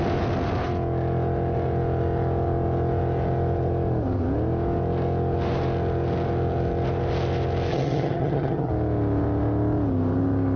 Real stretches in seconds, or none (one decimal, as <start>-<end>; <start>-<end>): 0.0-7.7; 8.7-10.6

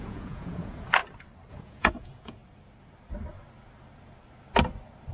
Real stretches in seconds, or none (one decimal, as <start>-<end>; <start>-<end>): 1.0-1.5; 2.4-5.1

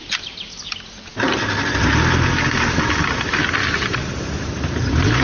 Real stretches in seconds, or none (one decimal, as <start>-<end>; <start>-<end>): 0.0-5.2

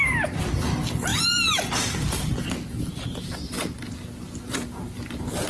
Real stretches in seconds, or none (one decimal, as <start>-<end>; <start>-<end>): 0.0-5.5

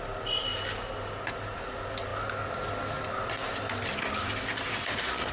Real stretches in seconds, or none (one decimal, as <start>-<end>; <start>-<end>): 0.0-5.3

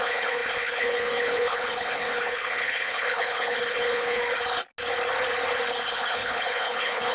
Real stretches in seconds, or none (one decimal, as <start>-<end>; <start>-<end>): 4.2-5.9